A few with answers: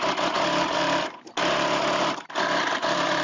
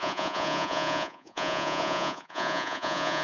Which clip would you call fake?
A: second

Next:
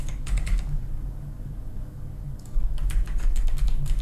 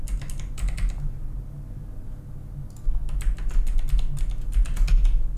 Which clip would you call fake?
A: first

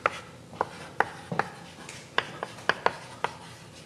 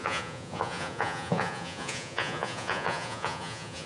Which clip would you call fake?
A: second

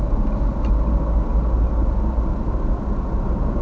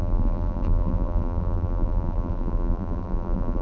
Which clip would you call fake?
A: second